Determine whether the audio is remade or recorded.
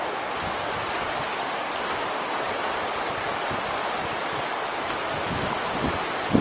recorded